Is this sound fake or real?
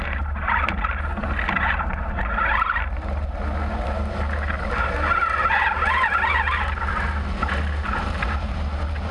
real